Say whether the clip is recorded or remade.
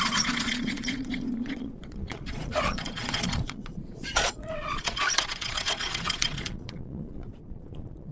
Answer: remade